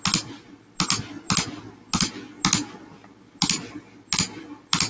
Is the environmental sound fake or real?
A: real